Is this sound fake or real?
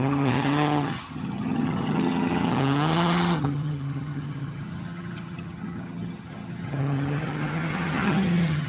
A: fake